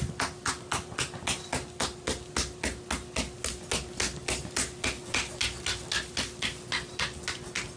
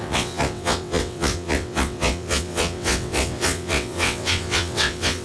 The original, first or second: first